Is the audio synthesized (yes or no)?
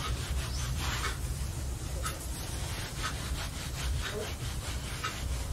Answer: yes